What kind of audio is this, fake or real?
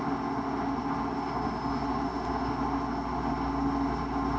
real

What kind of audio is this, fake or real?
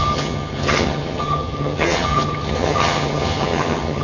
fake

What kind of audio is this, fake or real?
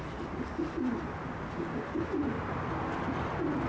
real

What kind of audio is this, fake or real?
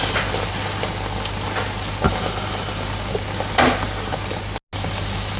real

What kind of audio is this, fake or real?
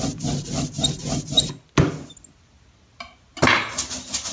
real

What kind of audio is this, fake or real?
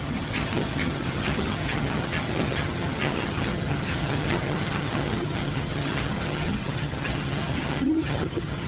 fake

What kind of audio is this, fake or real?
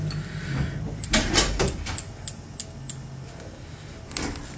real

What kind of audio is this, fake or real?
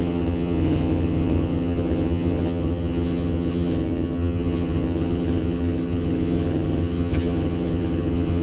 fake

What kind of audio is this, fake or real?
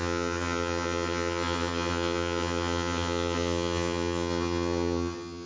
fake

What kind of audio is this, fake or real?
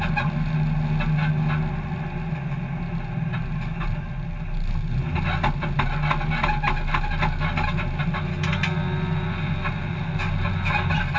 real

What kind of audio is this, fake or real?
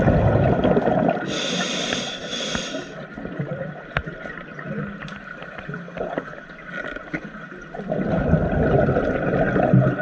real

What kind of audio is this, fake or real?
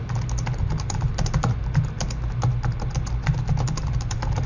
real